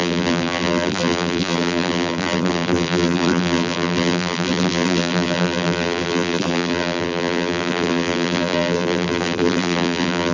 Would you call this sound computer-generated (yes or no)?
yes